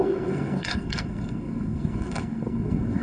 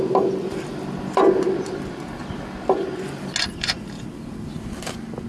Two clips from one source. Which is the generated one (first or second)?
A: first